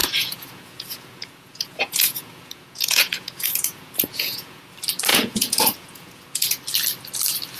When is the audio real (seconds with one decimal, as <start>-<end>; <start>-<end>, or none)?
4.6-5.1; 6.6-7.6